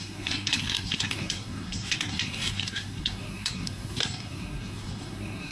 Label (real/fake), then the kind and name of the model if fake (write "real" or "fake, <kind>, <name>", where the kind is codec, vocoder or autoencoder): fake, codec, SNAC